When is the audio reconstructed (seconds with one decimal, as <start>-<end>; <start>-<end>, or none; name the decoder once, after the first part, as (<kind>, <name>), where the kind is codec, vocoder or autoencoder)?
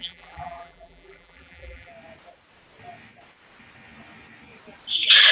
0.0-1.9 (vocoder, BigVGAN v2)